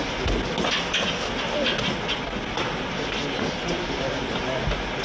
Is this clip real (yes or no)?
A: yes